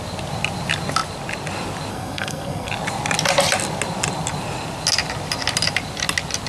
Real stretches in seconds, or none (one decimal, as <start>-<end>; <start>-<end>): 0.0-1.9; 2.7-6.5